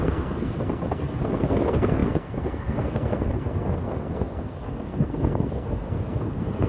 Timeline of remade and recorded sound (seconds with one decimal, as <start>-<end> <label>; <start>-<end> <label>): 0.0-6.7 remade